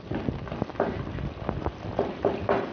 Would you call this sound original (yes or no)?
yes